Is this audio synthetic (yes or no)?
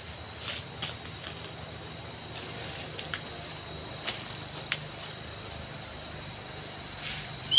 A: no